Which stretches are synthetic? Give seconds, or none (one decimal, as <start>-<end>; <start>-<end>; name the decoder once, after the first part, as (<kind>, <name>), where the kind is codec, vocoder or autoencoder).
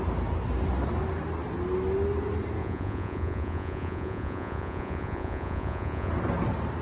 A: 2.6-6.1 (vocoder, Vocos)